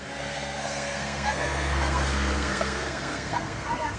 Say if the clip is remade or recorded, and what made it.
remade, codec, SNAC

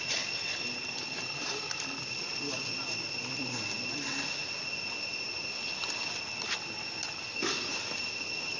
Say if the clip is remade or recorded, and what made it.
recorded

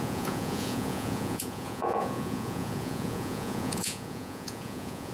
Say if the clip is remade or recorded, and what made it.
remade, vocoder, Vocos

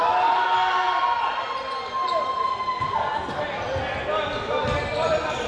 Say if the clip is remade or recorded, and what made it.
recorded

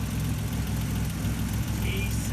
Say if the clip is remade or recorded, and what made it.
recorded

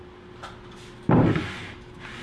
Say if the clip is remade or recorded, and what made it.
recorded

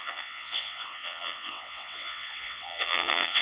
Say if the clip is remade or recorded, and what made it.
remade, vocoder, WaveNeXt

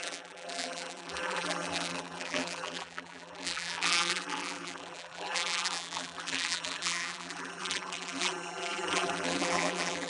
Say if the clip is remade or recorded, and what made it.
remade, vocoder, BigVGAN v2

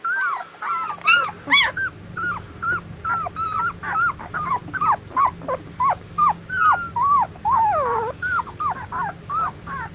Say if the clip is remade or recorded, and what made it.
recorded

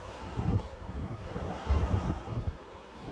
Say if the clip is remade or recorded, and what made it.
remade, codec, SNAC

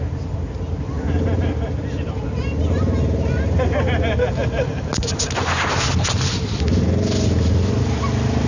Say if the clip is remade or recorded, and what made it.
recorded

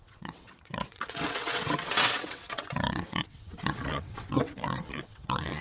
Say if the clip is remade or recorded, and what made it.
remade, vocoder, WaveNeXt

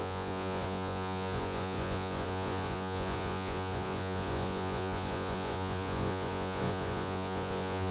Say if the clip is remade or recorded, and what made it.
remade, vocoder, Vocos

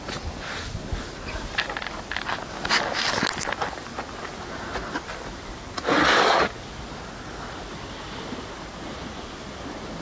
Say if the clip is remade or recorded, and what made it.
recorded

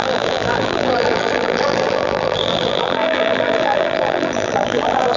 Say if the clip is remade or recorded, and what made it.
remade, vocoder, BigVGAN v2